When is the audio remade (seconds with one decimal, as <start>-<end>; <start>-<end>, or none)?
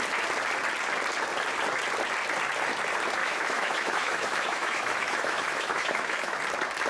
3.2-6.4